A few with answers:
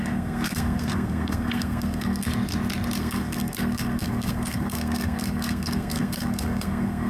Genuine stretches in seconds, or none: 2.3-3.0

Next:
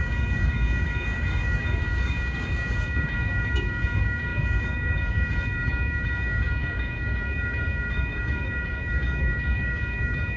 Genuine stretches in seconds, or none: none

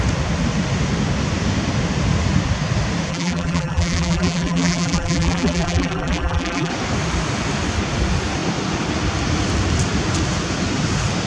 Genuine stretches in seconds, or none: 0.0-3.1; 6.7-11.3

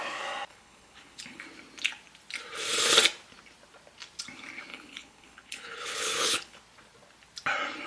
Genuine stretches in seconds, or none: 0.0-0.5; 1.4-4.7; 6.6-7.9

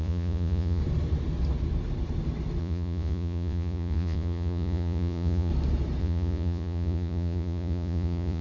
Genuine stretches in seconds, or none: 0.8-2.6; 5.5-6.0

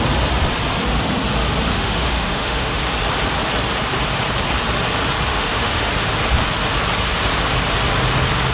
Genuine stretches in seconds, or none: 0.0-1.7; 2.8-5.3; 5.9-8.5

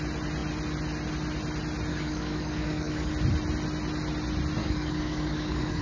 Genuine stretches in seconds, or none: 0.0-1.9; 3.1-4.6